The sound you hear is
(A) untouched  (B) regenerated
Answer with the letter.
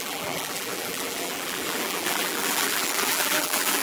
B